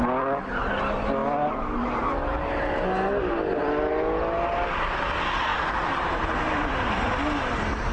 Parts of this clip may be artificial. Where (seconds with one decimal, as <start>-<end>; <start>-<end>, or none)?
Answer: 5.5-7.2

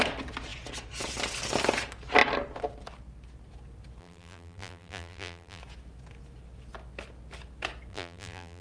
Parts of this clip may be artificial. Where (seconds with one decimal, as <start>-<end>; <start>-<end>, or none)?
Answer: 4.0-5.6; 7.9-8.6

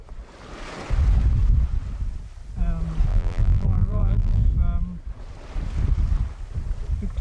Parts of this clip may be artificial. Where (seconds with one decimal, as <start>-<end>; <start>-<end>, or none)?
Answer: 3.1-4.4

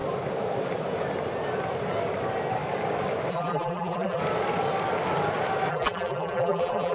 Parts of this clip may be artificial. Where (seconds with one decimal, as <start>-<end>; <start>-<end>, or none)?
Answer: 3.3-4.2; 5.7-6.9

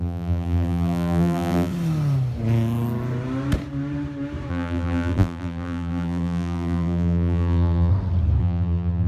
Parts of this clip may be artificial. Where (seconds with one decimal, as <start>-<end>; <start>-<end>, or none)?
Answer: 0.0-1.7; 4.5-7.9; 8.4-9.1

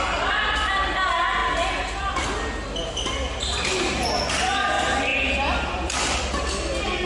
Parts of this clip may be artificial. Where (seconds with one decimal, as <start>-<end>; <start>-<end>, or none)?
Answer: 5.1-6.2

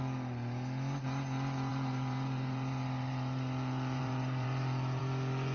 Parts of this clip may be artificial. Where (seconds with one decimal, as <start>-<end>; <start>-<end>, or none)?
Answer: 1.7-5.0

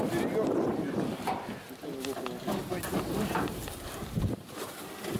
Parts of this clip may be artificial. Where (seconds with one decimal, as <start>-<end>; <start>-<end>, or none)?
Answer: 0.7-1.2; 2.9-4.7